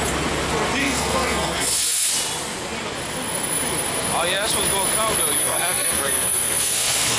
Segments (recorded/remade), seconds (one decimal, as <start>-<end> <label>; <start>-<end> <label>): 0.0-0.8 recorded; 0.8-2.1 remade; 2.1-5.4 recorded; 5.4-7.2 remade